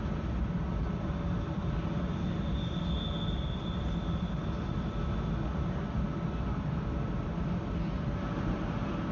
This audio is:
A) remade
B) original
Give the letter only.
B